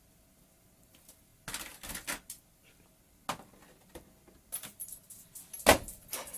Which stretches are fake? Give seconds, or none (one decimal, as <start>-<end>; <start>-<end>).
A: none